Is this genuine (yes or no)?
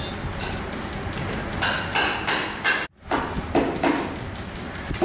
yes